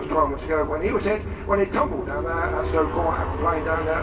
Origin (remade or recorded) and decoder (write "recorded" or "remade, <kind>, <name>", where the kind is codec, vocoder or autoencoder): recorded